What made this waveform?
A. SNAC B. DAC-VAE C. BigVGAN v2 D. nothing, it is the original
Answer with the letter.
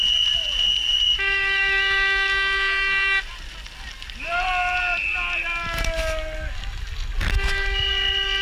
D